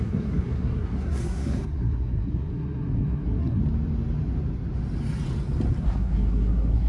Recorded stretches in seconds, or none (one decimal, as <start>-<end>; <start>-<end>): 3.6-5.8